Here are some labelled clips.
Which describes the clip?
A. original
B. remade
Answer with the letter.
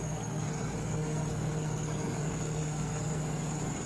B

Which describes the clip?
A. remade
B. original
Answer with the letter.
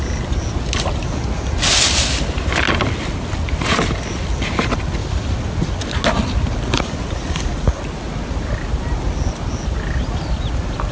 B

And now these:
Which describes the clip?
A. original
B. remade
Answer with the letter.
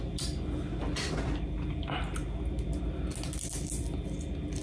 A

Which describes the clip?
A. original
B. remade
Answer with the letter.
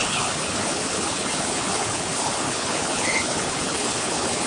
B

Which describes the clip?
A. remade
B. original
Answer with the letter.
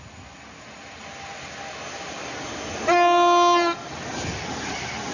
B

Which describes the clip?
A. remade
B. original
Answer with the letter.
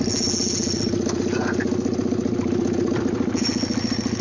B